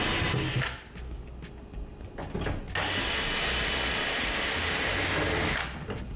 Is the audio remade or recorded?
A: recorded